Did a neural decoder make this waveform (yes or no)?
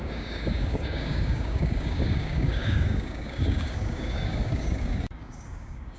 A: yes